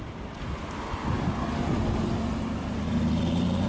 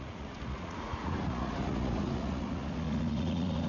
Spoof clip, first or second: second